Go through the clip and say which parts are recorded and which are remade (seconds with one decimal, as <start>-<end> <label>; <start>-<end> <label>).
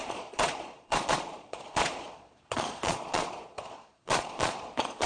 0.0-5.1 remade